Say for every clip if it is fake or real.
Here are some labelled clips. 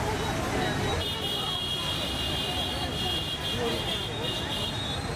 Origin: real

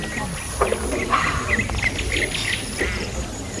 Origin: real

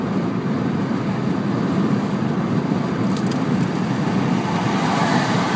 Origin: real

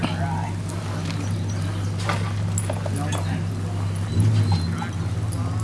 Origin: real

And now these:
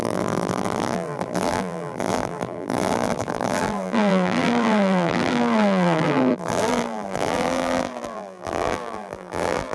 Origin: fake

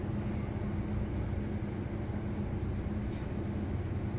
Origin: real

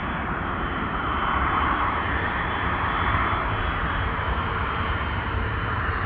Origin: fake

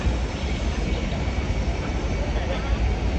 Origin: real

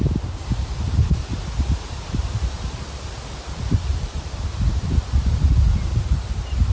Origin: real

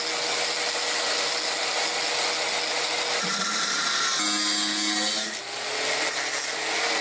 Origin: real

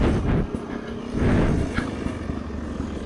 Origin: real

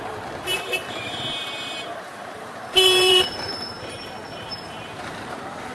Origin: fake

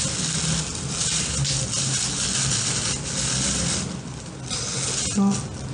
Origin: real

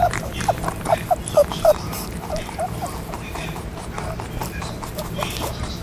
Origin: fake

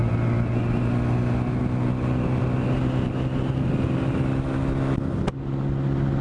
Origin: real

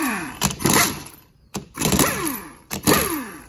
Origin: fake